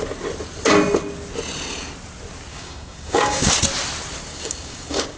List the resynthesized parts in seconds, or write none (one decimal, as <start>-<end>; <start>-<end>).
2.5-3.5; 4.3-5.2